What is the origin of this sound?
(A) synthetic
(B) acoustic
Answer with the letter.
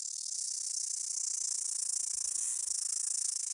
A